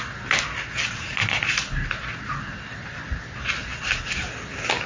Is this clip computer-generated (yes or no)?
no